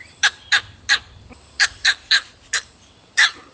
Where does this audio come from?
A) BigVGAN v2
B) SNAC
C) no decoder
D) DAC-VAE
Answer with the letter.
A